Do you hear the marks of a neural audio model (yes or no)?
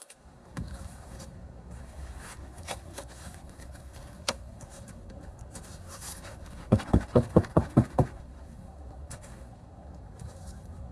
yes